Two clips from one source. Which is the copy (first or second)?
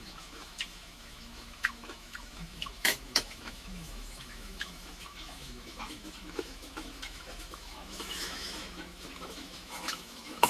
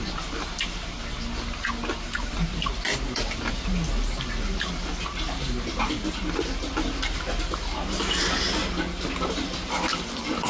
first